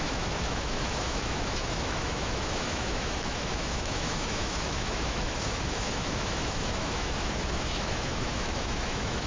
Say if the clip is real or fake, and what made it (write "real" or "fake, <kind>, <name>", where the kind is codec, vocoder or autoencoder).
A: fake, autoencoder, DAC-VAE